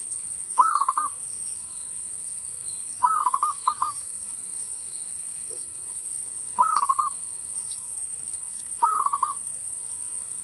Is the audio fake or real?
fake